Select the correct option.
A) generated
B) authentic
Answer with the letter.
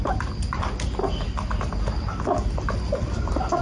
B